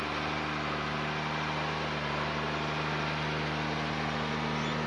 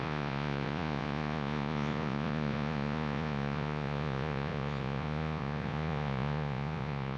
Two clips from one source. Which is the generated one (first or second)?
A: second